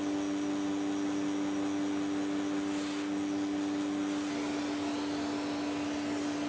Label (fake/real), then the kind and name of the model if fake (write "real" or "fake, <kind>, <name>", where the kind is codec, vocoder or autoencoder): real